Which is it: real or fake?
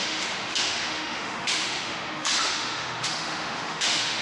fake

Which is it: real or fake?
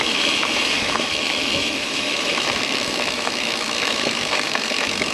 fake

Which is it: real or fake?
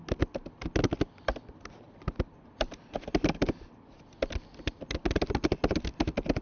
real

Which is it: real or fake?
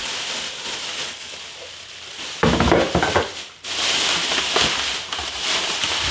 real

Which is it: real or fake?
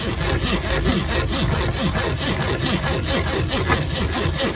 real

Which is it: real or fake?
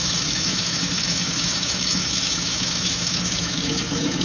fake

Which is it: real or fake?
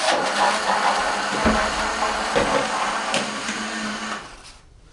real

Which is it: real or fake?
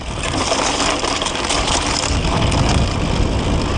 real